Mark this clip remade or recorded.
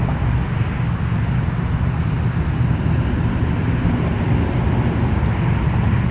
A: recorded